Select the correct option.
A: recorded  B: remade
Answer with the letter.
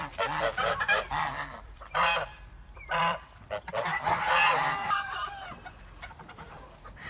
B